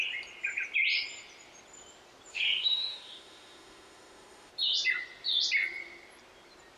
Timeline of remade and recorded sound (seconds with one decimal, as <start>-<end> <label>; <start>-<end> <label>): 0.0-2.3 recorded; 2.3-4.5 remade; 4.5-6.8 recorded